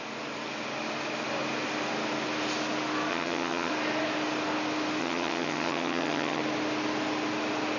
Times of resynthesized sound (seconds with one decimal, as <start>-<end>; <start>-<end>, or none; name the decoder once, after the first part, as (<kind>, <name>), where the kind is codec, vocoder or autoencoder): 3.1-3.7 (vocoder, HiFi-GAN); 5.0-6.4